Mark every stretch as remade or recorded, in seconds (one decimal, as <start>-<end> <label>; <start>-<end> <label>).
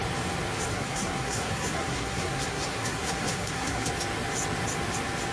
0.0-0.7 recorded; 0.7-3.9 remade; 3.9-5.3 recorded